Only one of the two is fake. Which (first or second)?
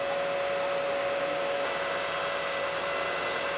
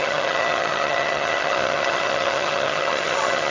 second